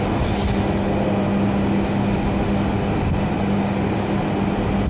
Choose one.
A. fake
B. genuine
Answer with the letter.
B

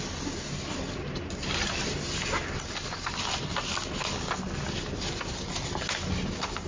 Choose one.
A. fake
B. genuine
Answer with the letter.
B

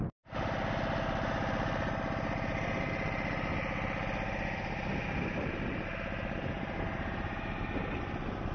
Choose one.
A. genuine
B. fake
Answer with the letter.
A